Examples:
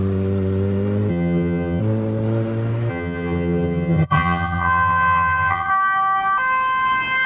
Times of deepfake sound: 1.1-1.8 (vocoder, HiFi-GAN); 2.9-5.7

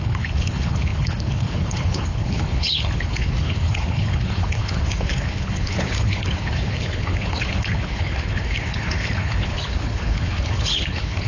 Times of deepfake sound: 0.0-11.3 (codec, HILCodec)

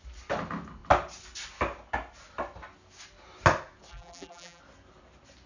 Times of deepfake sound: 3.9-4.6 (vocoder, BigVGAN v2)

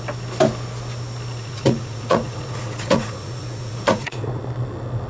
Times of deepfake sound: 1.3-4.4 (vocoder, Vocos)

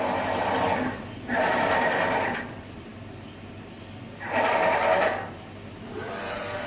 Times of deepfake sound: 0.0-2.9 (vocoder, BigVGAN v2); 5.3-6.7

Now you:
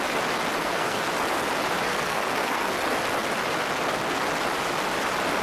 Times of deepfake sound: 0.6-1.1 (codec, SNAC); 1.9-2.7

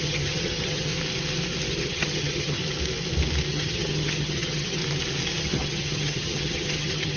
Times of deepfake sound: 0.0-0.9 (vocoder, HiFi-GAN); 1.7-2.6; 3.5-4.8; 5.4-7.2

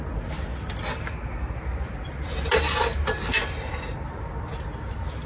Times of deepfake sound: none